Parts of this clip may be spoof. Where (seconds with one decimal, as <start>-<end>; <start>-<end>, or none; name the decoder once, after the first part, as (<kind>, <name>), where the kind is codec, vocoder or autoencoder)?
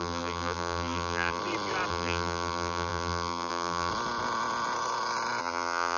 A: 0.0-1.4 (vocoder, BigVGAN v2); 1.9-3.9; 5.4-6.0